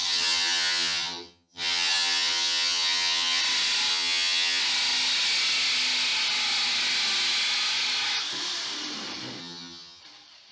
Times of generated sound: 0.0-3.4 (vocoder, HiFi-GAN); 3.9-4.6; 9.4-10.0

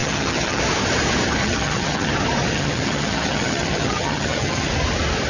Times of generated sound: 0.0-0.6 (vocoder, HiFi-GAN); 1.4-2.1; 2.5-4.7

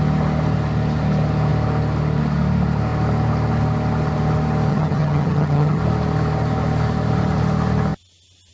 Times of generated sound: 4.7-5.8 (vocoder, HiFi-GAN)

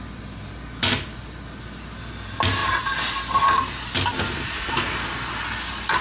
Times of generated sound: none

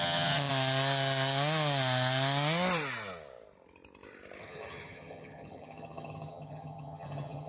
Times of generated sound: 0.0-0.5 (vocoder, HiFi-GAN); 4.4-7.5

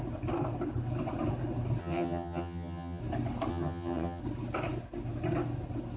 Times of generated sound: 1.8-3.0 (vocoder, HiFi-GAN); 3.5-4.2